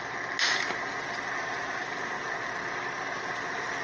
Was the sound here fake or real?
real